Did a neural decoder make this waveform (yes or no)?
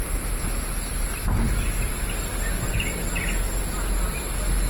no